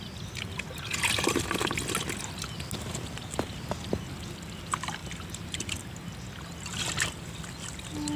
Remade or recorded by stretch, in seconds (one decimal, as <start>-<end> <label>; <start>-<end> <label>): 0.0-8.2 recorded